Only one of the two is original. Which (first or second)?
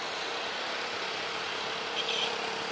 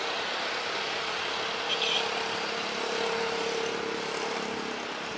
second